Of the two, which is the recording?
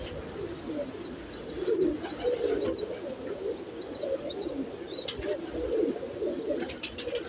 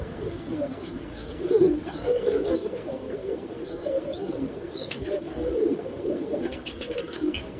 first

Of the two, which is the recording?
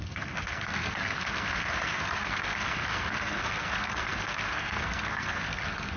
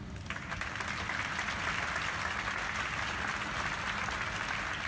second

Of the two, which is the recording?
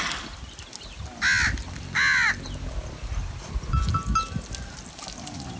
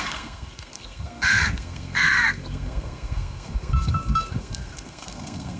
first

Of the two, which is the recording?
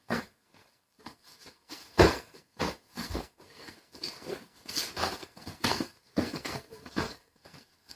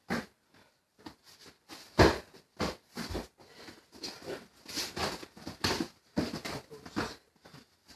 second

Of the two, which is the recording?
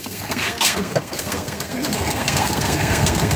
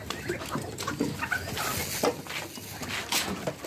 second